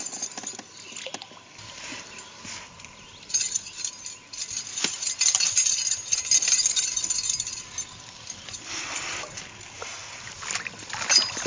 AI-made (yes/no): no